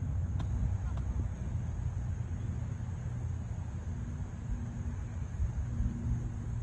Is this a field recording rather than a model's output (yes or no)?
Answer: yes